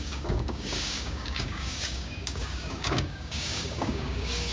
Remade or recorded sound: remade